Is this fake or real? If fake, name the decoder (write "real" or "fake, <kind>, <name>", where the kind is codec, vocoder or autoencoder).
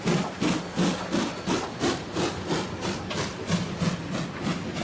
real